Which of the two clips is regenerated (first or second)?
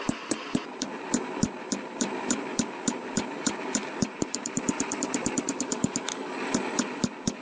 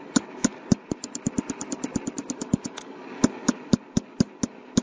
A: first